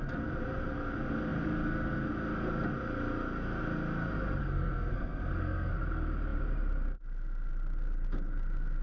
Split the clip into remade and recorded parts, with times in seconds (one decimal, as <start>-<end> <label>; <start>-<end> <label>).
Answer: 0.0-4.4 recorded; 4.4-5.7 remade; 5.7-8.8 recorded